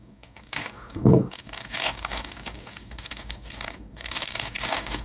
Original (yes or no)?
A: no